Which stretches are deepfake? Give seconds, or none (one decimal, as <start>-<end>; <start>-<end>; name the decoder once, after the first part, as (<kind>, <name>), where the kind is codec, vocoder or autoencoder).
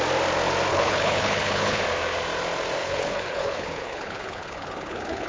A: 0.7-1.8 (codec, HILCodec); 2.8-5.3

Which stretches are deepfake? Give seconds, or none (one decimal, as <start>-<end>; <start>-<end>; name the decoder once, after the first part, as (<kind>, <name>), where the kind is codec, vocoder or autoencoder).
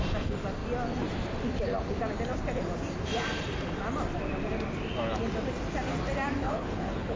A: 6.4-7.2 (codec, HILCodec)